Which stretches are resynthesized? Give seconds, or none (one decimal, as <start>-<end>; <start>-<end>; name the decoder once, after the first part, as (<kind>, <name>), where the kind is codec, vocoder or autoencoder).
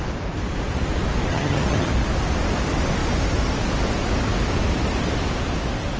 1.3-1.9 (vocoder, HiFi-GAN)